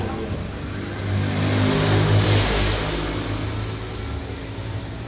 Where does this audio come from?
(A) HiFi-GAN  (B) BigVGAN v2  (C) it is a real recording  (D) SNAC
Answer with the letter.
C